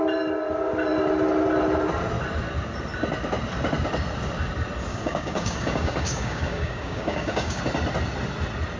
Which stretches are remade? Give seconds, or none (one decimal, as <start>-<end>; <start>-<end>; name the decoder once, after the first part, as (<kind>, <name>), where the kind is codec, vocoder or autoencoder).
4.9-7.6 (codec, DAC)